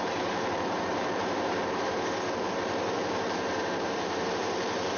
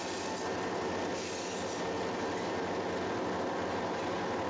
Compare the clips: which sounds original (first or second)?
second